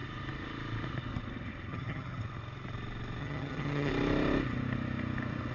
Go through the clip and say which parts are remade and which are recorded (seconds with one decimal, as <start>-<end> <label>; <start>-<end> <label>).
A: 0.0-1.7 recorded; 1.7-2.2 remade; 2.2-3.2 recorded; 3.2-3.9 remade; 3.9-5.5 recorded